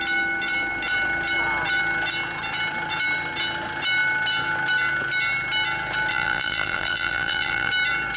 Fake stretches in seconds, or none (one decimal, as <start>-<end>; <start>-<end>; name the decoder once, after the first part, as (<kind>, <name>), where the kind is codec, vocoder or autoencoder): 6.1-7.7 (vocoder, BigVGAN v2)